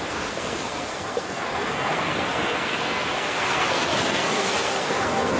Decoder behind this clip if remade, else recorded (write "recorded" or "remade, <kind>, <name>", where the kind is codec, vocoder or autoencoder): remade, codec, SNAC